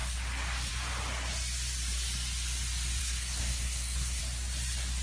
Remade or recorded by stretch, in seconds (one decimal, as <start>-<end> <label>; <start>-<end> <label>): 0.0-3.0 recorded; 3.0-4.2 remade; 4.2-5.0 recorded